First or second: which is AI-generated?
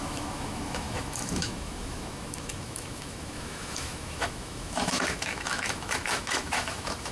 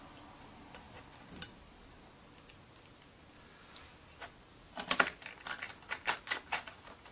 first